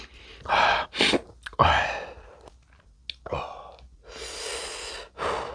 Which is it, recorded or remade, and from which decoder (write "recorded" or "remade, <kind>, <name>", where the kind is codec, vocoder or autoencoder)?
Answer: recorded